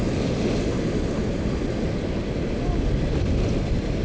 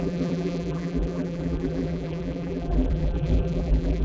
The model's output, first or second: second